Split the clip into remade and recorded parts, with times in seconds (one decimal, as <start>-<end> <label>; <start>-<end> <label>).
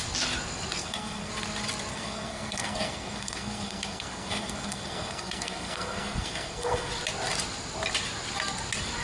0.0-0.8 recorded; 0.8-1.3 remade; 1.3-1.9 recorded; 1.9-6.9 remade; 6.9-9.0 recorded